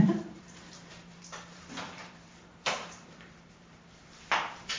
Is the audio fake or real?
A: fake